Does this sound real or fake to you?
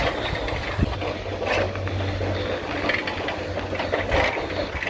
real